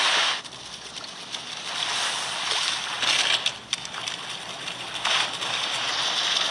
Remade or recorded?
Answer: remade